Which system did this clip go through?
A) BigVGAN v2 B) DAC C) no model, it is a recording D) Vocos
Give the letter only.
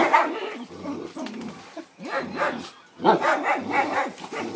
C